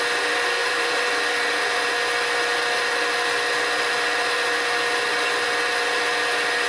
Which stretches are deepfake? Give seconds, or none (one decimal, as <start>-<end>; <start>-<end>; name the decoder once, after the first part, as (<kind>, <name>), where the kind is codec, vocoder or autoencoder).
0.6-1.1 (vocoder, BigVGAN v2)